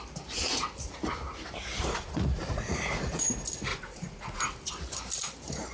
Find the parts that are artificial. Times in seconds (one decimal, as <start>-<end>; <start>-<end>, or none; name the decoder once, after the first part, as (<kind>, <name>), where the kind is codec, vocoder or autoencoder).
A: 1.7-3.3 (vocoder, Vocos); 3.7-4.4